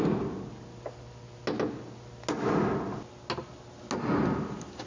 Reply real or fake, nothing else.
real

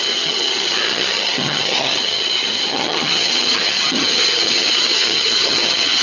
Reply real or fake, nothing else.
fake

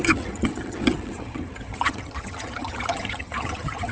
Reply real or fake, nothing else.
fake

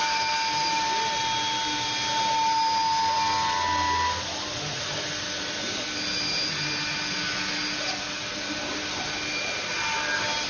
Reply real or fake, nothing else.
real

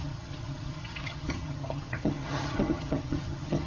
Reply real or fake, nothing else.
fake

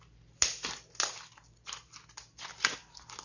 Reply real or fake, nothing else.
real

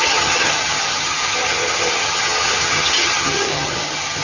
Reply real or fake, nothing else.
fake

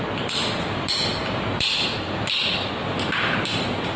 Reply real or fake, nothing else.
real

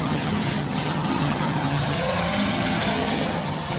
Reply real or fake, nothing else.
fake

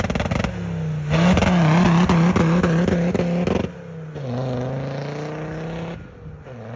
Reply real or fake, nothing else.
real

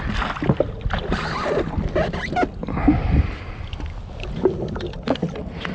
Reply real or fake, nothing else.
real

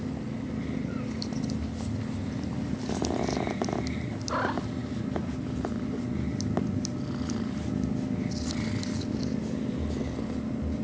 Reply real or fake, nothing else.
real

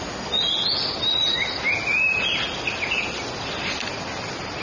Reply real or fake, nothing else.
real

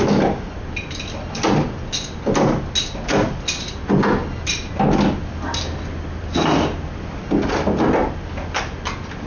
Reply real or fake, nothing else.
real